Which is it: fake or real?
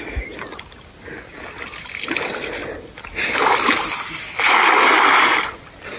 real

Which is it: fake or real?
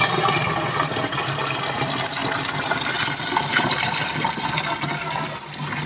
real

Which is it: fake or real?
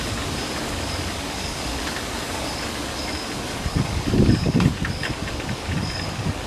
fake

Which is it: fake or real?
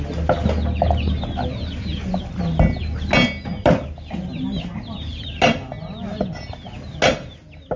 real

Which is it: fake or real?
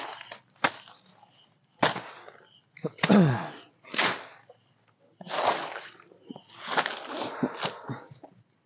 real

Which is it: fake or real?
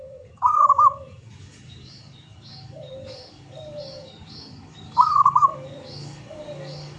fake